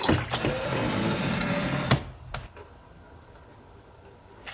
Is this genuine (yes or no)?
yes